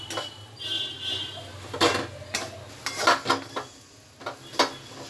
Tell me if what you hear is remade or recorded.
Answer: recorded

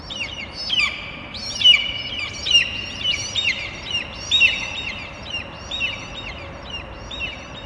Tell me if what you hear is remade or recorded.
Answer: remade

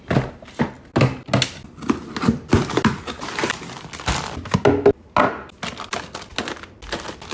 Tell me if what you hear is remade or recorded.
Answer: recorded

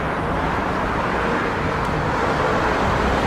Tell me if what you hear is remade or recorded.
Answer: recorded